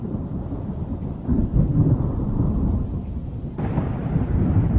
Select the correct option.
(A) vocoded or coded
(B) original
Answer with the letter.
A